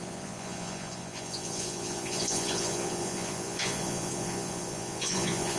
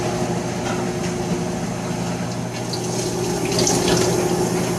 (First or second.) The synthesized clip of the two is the first